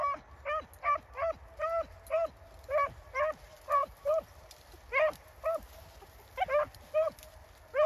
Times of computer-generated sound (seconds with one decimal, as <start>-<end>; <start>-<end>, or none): none